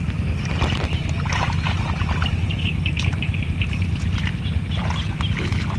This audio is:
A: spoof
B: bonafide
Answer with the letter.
B